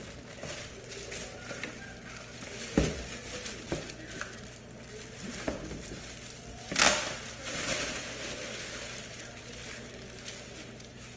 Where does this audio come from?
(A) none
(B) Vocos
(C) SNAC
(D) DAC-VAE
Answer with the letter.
A